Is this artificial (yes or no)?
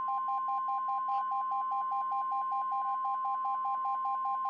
no